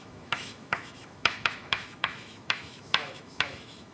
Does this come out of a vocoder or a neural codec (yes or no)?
yes